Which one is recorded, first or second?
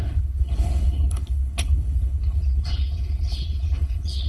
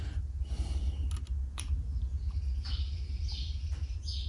second